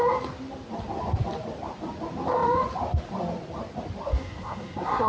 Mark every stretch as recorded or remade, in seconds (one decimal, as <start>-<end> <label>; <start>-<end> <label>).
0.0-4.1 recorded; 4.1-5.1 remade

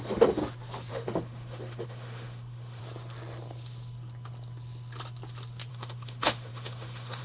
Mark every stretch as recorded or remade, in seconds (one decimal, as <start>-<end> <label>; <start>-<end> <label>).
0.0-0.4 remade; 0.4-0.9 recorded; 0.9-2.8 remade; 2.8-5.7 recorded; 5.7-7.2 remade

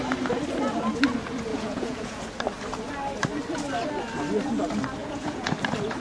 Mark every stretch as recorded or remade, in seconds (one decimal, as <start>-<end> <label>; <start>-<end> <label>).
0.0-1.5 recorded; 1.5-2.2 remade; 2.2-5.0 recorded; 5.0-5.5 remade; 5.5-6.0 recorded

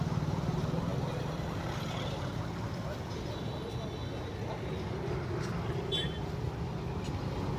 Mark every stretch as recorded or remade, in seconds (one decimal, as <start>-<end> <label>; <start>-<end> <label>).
0.0-7.6 recorded

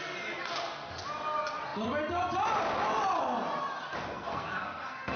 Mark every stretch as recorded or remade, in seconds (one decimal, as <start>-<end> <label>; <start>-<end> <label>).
0.0-4.1 recorded; 4.1-5.2 remade

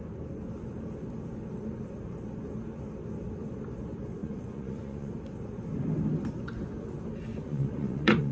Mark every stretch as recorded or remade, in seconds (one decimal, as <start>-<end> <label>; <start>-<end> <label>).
0.0-4.2 recorded; 4.2-5.1 remade; 5.1-7.3 recorded; 7.3-8.3 remade

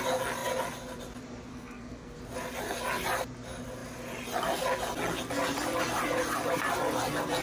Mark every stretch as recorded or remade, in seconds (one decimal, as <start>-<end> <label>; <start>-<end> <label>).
0.0-1.5 recorded; 1.5-2.2 remade; 2.2-7.4 recorded